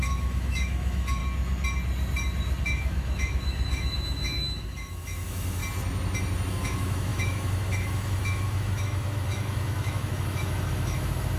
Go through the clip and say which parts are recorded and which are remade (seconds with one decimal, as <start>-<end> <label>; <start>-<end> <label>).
0.0-1.2 remade; 1.2-2.6 recorded; 2.6-5.6 remade; 5.6-6.5 recorded; 6.5-11.4 remade

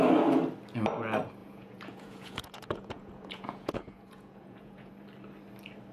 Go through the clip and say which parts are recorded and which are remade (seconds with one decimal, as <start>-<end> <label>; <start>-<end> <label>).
0.0-1.4 recorded; 1.4-4.9 remade; 4.9-5.9 recorded

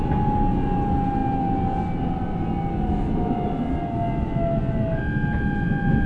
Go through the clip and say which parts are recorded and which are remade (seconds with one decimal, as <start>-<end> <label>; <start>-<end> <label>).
0.0-6.1 recorded

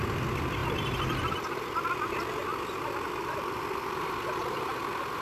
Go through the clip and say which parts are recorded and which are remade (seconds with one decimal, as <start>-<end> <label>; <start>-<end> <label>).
0.0-0.6 recorded; 0.6-1.9 remade; 1.9-2.5 recorded; 2.5-5.2 remade